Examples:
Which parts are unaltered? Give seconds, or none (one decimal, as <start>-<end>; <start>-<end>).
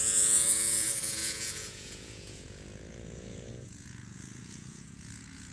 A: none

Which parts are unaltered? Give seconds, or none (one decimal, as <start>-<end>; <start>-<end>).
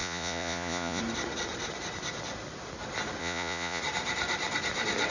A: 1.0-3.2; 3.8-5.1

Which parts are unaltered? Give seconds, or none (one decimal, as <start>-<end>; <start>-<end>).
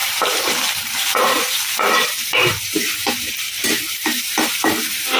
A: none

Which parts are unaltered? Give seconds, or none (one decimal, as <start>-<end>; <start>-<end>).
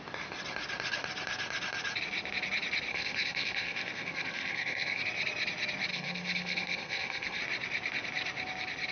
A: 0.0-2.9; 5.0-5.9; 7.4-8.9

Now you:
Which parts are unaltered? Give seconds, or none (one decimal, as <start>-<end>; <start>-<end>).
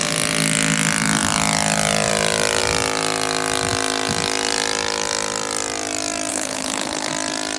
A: 0.0-6.3; 7.1-7.6